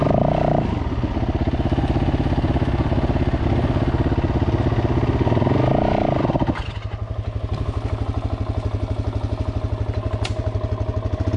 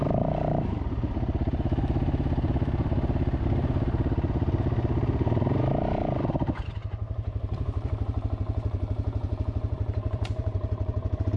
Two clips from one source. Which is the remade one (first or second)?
second